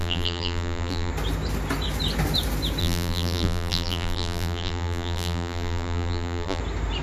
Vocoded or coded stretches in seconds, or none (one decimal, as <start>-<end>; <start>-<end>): 0.0-1.1; 2.8-6.6